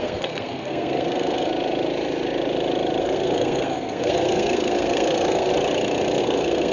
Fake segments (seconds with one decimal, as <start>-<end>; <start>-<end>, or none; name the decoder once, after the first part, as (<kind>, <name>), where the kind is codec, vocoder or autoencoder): 0.0-1.5 (codec, SNAC); 3.0-5.5; 6.2-6.7